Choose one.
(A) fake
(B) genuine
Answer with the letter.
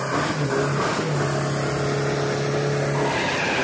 B